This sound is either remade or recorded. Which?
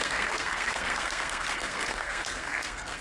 remade